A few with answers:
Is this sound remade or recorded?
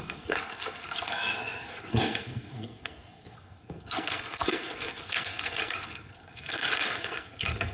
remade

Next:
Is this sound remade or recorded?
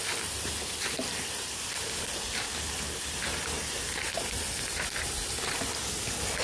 recorded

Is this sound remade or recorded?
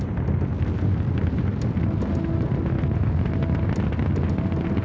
recorded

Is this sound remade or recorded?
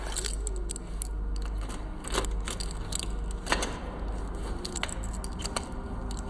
recorded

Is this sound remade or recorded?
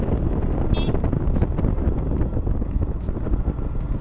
recorded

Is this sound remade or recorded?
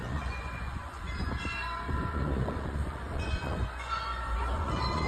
remade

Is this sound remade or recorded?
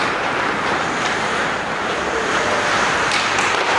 remade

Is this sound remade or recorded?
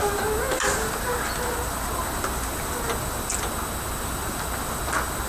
recorded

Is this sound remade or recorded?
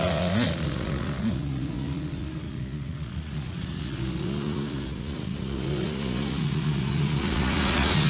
remade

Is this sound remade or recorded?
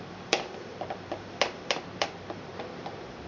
remade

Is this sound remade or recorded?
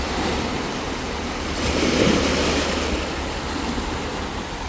recorded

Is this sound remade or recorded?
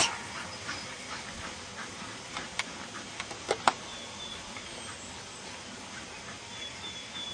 recorded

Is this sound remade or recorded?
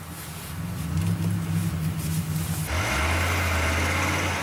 recorded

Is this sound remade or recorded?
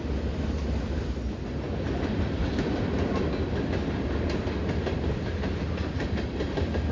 recorded